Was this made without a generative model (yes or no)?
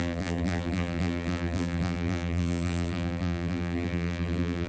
no